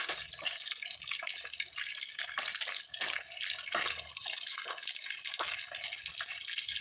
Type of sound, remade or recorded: recorded